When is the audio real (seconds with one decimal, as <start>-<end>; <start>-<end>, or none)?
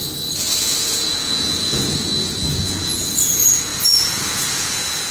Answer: 0.0-0.6